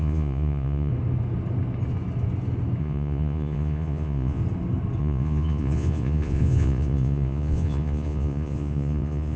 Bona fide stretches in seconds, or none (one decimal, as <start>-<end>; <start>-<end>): 0.9-2.8; 4.4-5.0